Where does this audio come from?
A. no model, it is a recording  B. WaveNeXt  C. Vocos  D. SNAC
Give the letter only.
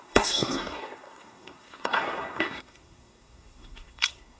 D